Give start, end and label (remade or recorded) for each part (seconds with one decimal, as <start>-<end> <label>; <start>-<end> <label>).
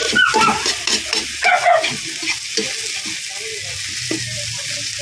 0.0-5.0 recorded